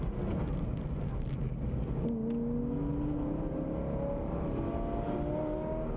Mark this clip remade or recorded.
recorded